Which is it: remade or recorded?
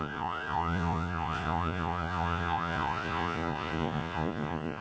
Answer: remade